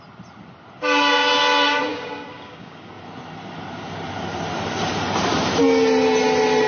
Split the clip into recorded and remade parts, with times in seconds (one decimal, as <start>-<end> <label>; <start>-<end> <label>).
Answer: 0.0-1.9 recorded; 1.9-2.9 remade; 2.9-6.7 recorded